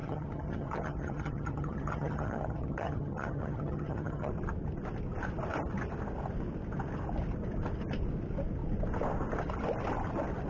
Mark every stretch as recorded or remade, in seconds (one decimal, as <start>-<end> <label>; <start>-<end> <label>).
0.0-4.3 remade; 4.3-10.5 recorded